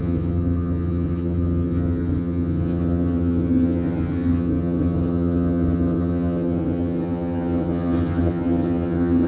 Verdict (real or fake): fake